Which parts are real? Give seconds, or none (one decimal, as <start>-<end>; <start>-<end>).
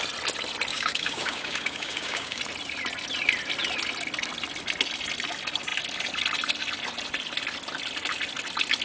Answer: 0.0-0.7; 2.4-8.8